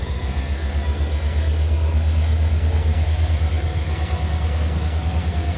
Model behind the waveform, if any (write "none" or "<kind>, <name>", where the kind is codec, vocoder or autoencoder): codec, SNAC